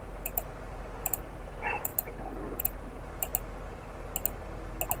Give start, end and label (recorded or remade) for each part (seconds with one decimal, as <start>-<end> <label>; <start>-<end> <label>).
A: 0.0-3.3 remade; 3.3-5.0 recorded